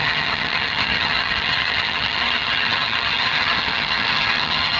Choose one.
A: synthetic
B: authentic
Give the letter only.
A